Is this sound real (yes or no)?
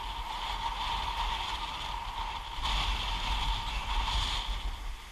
yes